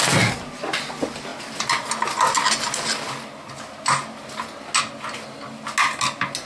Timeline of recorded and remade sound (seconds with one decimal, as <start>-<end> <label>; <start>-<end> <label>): 0.0-6.5 recorded